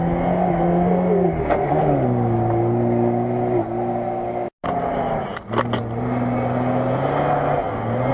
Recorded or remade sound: recorded